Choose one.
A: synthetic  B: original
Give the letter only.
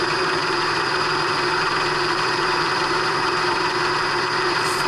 A